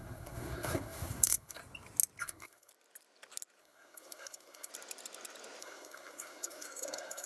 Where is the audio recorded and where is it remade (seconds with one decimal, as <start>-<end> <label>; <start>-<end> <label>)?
0.0-1.6 remade; 1.6-2.2 recorded; 2.2-2.7 remade; 2.7-3.6 recorded; 3.6-4.7 remade; 4.7-5.6 recorded; 5.6-7.3 remade